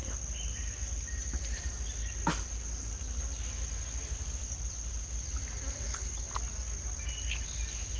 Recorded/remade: recorded